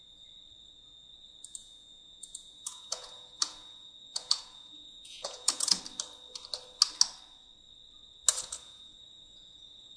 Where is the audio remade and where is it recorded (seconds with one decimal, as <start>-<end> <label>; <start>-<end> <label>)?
0.0-1.6 recorded; 1.6-5.8 remade; 5.8-8.3 recorded; 8.3-10.0 remade